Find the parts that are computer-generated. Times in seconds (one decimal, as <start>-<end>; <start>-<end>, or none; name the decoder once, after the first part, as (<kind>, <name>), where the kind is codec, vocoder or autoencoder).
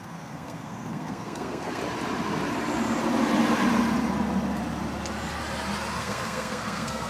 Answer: 0.0-1.8 (codec, SNAC); 6.0-7.1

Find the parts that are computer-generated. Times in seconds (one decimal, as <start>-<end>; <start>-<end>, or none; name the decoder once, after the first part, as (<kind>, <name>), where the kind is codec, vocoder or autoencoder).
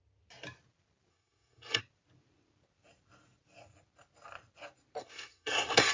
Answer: 1.1-1.8 (codec, SNAC); 5.0-5.9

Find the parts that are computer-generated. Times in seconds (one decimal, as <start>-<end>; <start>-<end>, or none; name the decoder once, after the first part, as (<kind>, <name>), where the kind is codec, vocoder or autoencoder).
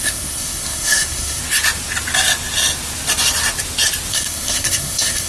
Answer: 0.0-1.4 (codec, SNAC); 4.1-5.3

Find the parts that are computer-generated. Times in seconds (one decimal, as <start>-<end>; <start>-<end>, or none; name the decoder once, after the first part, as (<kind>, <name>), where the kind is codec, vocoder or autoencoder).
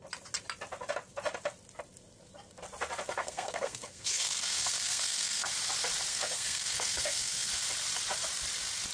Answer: 3.2-5.5 (codec, SNAC); 6.1-7.5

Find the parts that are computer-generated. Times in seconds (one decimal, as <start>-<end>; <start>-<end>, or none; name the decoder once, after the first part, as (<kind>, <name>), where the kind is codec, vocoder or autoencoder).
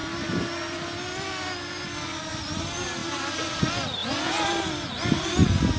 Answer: none